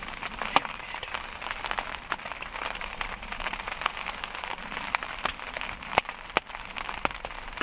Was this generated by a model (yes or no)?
yes